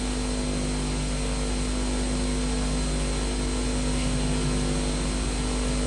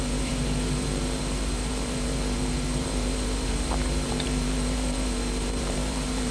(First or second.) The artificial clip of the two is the second